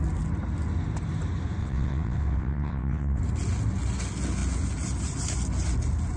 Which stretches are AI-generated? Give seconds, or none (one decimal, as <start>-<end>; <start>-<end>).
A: 1.6-3.2

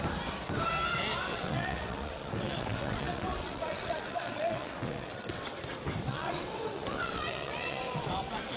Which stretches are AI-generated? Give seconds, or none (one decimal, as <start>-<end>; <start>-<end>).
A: 1.3-5.6; 6.1-8.6

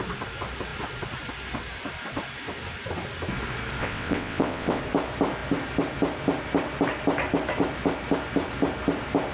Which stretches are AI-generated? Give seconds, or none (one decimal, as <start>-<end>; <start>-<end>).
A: 3.8-4.8

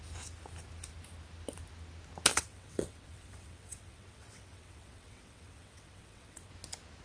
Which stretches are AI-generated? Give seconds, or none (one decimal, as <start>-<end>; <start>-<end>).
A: 2.3-6.5

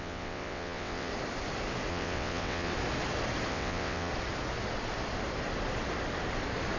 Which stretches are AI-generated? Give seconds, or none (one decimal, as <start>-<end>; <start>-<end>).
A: 0.0-1.1; 1.9-2.7; 3.5-4.1

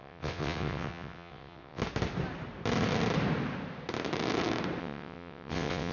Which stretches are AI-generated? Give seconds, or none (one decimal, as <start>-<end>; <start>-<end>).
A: 0.0-1.8; 4.8-5.9

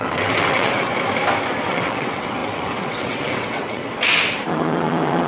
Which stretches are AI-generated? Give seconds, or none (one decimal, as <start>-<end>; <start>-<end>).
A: 0.0-0.9; 1.6-3.8; 4.5-5.3

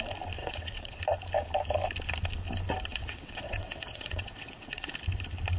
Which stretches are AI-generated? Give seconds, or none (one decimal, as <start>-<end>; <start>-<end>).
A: 0.4-1.0; 2.9-4.9